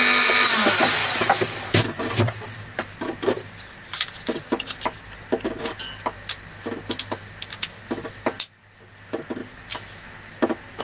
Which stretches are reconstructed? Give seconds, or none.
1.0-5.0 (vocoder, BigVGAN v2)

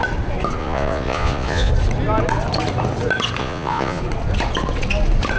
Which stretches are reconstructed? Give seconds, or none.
0.6-1.7 (vocoder, Vocos); 3.4-4.0

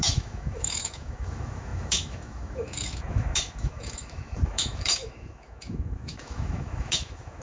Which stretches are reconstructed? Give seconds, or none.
0.0-7.4 (autoencoder, DAC-VAE)

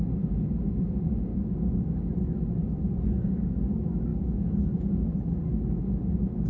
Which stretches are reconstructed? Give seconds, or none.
1.3-2.1 (codec, DAC)

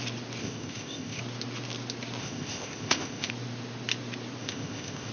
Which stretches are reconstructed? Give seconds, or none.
0.4-1.2 (codec, ZipCodec); 2.2-3.3; 4.4-5.1

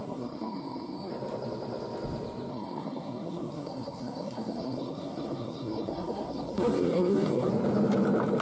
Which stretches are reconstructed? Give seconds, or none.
0.0-1.1 (codec, SNAC); 2.5-7.5

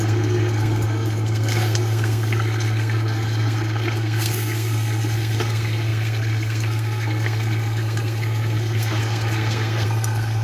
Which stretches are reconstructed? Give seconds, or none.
0.0-10.4 (codec, SNAC)

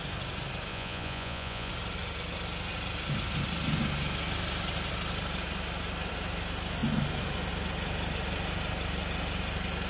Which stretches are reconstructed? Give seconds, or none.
0.7-1.7 (vocoder, Vocos)